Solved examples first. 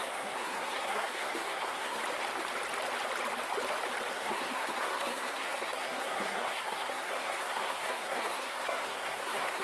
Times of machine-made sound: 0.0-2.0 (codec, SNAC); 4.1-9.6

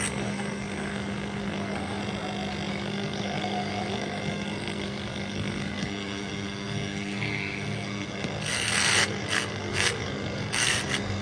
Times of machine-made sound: 0.0-2.0 (codec, SNAC); 2.7-11.2

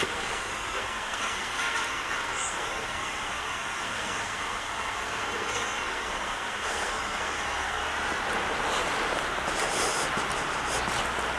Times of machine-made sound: 0.0-7.8 (codec, SNAC)